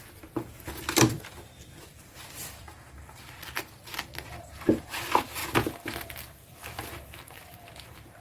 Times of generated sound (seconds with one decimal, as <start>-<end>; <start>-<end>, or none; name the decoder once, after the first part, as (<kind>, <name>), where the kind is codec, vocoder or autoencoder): 0.0-2.7 (vocoder, BigVGAN v2); 4.8-5.4